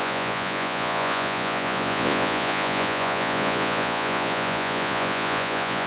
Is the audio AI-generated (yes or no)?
yes